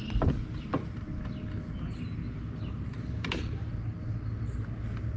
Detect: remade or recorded recorded